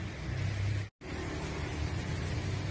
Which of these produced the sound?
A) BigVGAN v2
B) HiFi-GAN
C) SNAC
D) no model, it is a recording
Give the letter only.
D